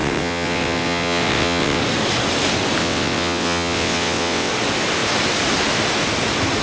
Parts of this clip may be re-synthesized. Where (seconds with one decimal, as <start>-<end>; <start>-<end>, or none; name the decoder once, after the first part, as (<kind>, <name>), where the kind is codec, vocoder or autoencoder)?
0.0-1.8 (vocoder, WaveNeXt); 2.8-4.5